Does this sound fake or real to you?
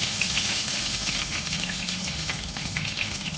fake